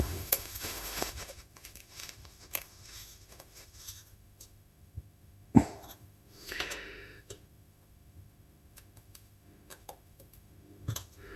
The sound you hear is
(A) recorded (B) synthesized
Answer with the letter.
B